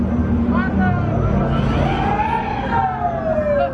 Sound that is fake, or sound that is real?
real